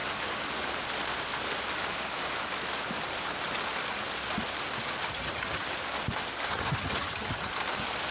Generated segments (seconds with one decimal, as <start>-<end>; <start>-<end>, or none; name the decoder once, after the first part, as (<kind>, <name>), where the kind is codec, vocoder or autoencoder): 5.1-5.6 (vocoder, HiFi-GAN); 6.5-7.5